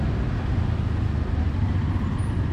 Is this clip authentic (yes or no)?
yes